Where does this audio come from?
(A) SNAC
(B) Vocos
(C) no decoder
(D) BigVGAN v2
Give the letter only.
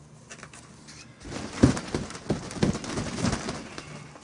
C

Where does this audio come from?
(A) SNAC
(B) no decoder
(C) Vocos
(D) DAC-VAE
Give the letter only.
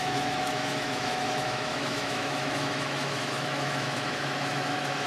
D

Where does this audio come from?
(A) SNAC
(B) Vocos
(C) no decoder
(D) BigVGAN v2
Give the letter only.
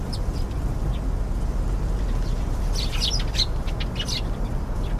C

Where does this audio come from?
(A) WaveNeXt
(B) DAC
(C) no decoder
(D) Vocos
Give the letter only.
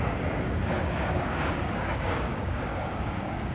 B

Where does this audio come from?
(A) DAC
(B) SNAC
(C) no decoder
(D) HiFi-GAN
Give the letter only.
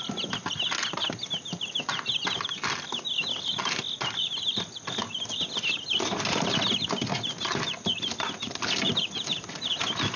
C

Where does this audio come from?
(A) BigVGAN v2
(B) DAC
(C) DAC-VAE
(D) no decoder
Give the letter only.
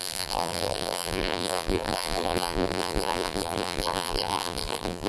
A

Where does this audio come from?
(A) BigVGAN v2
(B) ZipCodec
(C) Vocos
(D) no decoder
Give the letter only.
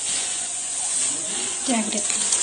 C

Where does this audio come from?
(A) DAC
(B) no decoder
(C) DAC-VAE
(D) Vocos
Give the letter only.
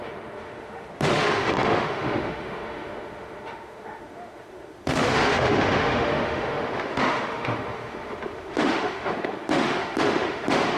C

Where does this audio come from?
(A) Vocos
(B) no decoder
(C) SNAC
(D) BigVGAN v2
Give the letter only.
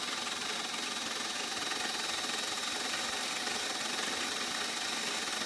B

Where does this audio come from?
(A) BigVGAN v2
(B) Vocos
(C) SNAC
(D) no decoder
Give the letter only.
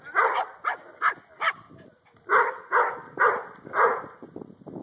D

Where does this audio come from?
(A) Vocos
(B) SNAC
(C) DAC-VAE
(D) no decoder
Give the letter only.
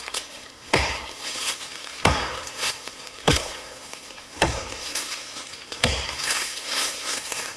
B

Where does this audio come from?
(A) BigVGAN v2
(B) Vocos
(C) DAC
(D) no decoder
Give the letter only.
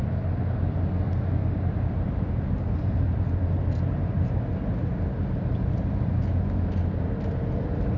D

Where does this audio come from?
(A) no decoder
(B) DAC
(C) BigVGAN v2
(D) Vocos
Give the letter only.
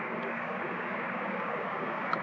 B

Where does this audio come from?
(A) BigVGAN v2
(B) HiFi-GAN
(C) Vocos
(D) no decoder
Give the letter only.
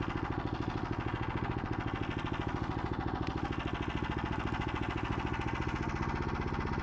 D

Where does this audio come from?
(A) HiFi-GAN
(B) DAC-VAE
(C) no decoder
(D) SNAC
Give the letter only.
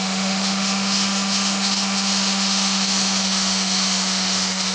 B